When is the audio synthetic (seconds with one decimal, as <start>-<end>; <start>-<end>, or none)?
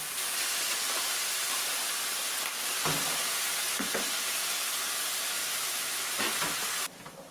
5.4-6.1